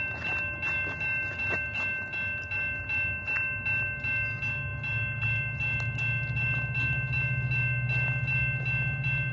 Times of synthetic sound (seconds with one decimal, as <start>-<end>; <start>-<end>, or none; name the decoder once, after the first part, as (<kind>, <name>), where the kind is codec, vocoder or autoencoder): none